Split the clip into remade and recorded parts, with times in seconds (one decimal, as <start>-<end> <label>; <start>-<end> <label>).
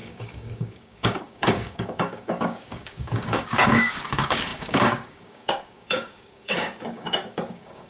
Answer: 0.0-7.9 remade